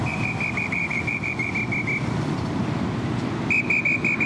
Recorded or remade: recorded